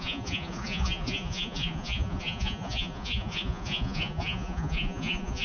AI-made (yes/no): yes